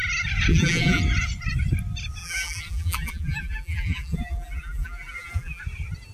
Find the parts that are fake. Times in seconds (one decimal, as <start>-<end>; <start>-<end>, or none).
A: 0.5-1.0; 2.2-5.6